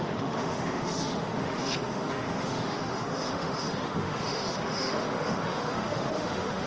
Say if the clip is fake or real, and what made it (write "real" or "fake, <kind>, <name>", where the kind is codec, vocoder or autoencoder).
fake, autoencoder, DAC-VAE